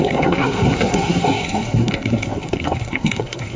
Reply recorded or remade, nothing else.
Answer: remade